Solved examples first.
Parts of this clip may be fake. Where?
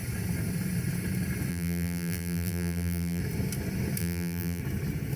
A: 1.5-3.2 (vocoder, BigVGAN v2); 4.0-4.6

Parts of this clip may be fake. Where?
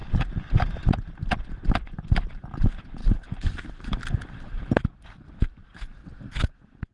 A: 0.8-6.0 (vocoder, BigVGAN v2)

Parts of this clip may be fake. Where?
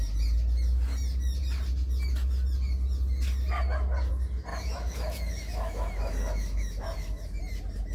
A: 4.5-7.4 (autoencoder, DAC-VAE)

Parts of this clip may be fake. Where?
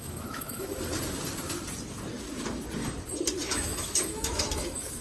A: 0.0-0.7 (autoencoder, DAC-VAE); 3.4-5.0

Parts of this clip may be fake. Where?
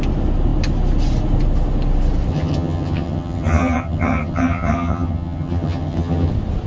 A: 2.3-6.3 (vocoder, HiFi-GAN)